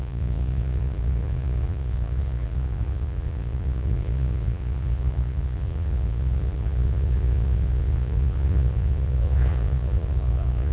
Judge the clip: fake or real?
fake